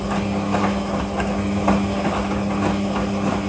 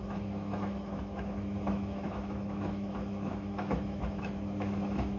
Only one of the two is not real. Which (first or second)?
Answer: second